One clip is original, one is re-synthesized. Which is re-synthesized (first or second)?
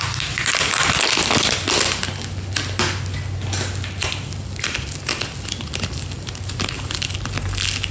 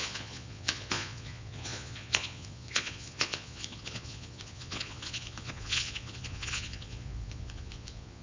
second